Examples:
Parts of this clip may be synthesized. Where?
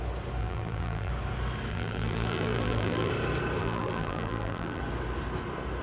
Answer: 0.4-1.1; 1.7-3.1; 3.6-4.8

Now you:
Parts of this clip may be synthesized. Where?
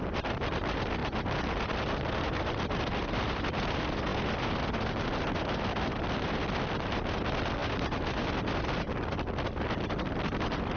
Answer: none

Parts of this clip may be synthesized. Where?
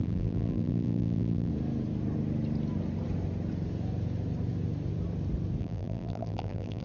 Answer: 0.0-1.5; 5.6-6.8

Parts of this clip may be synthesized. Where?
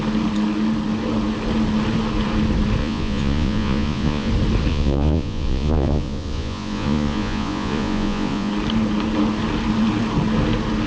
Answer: 2.8-4.3; 4.7-8.5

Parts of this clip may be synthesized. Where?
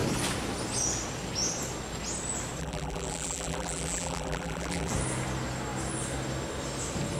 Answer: 2.6-4.9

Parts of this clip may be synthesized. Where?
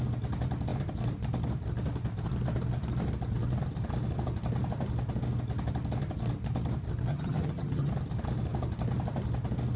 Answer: 7.1-7.9